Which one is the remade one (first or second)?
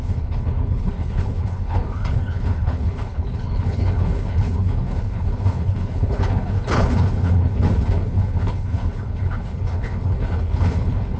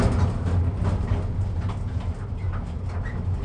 first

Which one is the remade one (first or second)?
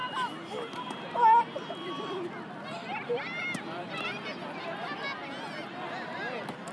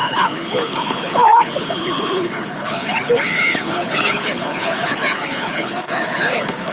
second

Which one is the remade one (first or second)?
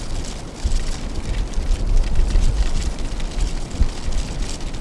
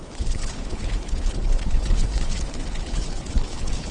second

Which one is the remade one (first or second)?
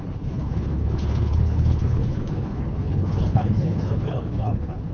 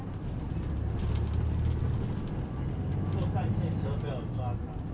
first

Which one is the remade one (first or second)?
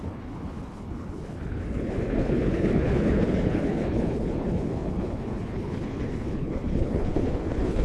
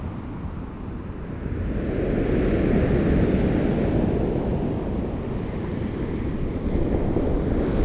first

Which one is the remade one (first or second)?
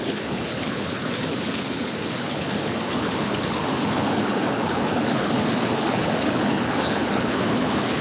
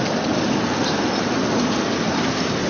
first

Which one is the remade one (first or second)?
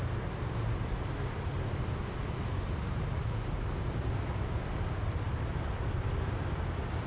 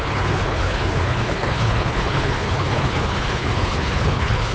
second